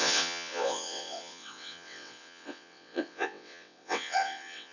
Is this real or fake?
fake